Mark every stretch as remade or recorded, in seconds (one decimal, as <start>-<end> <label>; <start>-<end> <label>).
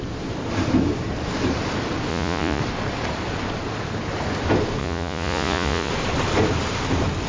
0.0-2.1 recorded; 2.1-2.6 remade; 2.6-4.8 recorded; 4.8-5.9 remade; 5.9-7.3 recorded